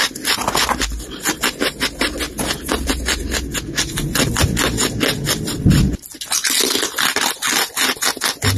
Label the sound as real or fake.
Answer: real